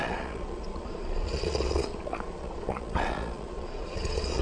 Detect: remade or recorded remade